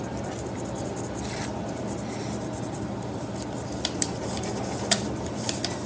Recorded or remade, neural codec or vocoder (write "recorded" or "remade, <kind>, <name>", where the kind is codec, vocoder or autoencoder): recorded